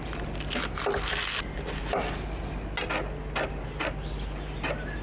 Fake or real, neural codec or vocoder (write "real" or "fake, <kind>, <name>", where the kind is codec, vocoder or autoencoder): real